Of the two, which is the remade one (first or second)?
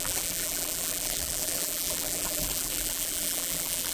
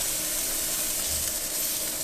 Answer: first